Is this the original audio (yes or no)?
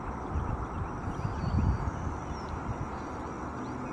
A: yes